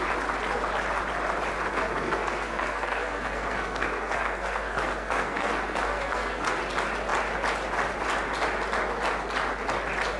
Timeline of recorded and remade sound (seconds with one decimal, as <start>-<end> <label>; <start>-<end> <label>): 0.0-1.7 recorded; 1.7-6.6 remade; 6.6-10.2 recorded

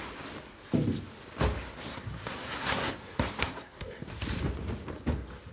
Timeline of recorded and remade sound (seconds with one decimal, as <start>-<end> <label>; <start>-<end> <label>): 0.0-1.9 recorded; 1.9-2.9 remade; 2.9-3.4 recorded; 3.4-4.1 remade; 4.1-5.5 recorded

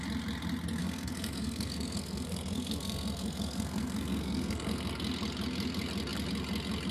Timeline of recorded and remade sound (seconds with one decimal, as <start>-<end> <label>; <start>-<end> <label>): 0.0-0.8 recorded; 0.8-4.9 remade; 4.9-6.9 recorded